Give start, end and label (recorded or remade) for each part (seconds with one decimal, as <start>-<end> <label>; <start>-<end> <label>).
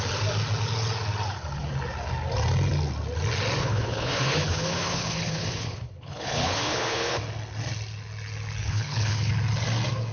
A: 0.0-3.6 recorded; 3.6-7.2 remade; 7.2-8.6 recorded; 8.6-9.3 remade; 9.3-10.1 recorded